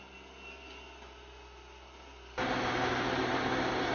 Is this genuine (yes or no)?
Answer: yes